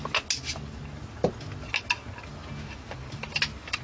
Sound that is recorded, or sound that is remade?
recorded